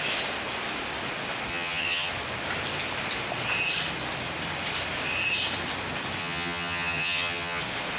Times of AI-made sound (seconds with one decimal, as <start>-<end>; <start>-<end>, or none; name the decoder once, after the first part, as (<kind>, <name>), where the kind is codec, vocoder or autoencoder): 1.5-2.1 (vocoder, HiFi-GAN); 6.2-7.6